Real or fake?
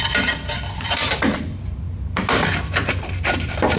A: fake